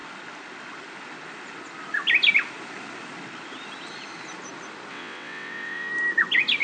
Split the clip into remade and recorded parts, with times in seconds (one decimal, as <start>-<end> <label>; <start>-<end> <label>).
0.0-4.9 recorded; 4.9-5.9 remade; 5.9-6.6 recorded